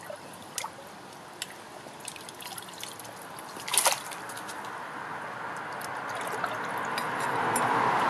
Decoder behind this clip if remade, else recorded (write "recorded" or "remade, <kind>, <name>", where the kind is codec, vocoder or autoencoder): recorded